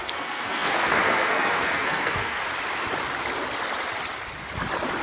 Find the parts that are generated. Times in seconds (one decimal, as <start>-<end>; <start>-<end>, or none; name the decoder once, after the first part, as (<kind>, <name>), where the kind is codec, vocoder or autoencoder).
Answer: 0.0-2.4 (codec, SNAC)